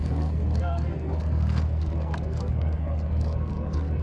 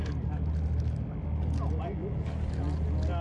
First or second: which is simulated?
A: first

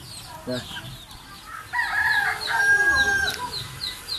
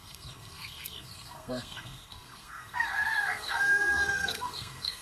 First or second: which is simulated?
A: second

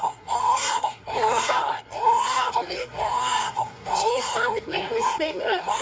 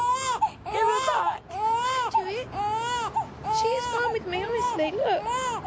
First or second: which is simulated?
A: first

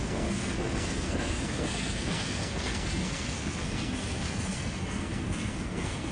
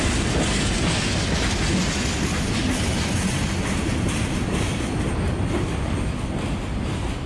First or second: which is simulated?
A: first